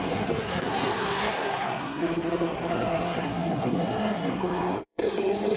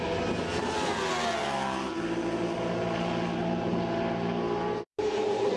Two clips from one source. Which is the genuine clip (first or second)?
second